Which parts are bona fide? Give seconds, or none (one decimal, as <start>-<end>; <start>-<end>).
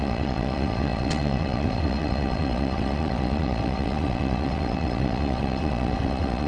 none